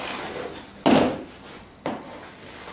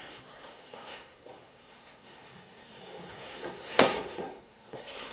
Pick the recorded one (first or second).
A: first